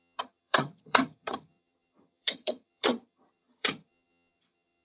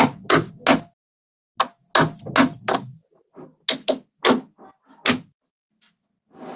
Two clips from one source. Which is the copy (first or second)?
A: first